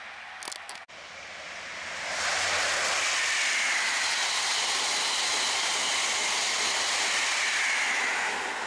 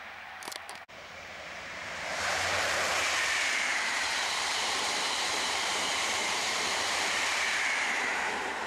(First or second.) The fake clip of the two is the second